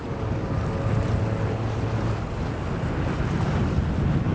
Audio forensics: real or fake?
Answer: real